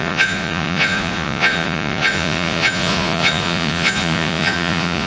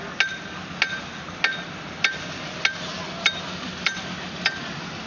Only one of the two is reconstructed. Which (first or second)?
first